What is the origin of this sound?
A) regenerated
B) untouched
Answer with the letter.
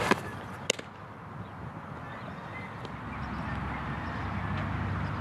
B